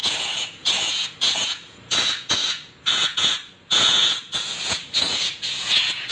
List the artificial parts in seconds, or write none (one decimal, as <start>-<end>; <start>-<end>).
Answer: 0.0-6.1